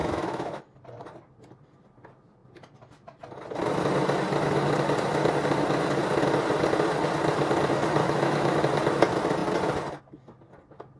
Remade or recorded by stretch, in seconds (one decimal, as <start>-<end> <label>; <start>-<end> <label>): 0.0-0.6 remade; 0.6-8.0 recorded; 8.0-8.6 remade; 8.6-11.0 recorded